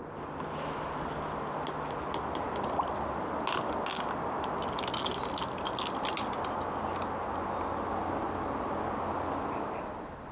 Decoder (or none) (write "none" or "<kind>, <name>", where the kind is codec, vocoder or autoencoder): none